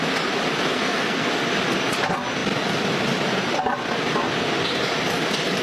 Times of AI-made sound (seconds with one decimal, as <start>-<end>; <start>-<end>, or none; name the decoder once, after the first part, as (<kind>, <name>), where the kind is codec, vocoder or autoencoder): 0.7-1.3 (codec, SNAC)